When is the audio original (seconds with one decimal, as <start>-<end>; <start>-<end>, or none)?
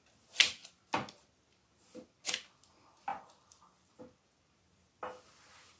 0.0-3.1; 4.0-5.8